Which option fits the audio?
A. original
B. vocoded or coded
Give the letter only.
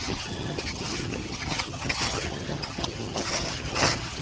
B